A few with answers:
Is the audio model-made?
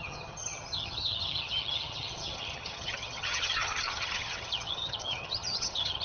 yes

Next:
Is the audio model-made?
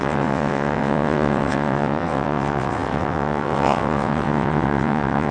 yes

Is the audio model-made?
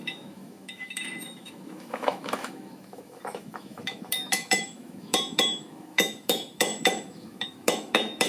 yes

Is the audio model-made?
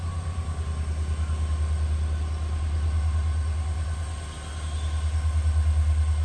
no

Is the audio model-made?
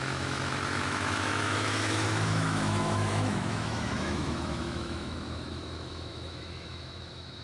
yes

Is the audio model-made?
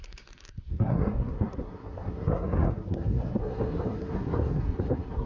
yes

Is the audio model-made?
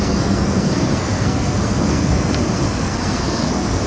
yes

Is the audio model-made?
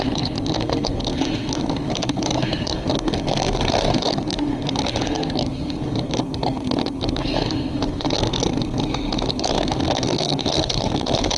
yes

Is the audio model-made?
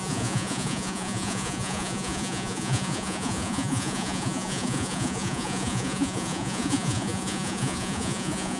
yes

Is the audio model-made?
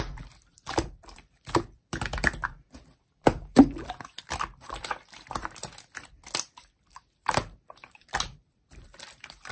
yes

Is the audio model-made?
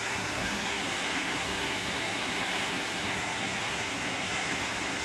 yes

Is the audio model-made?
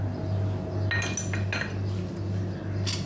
no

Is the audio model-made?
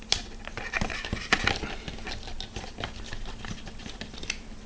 no